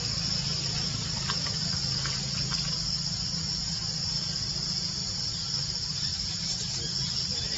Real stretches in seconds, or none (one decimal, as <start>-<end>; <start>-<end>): 0.0-6.1; 6.7-7.6